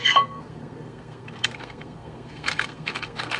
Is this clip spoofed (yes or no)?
yes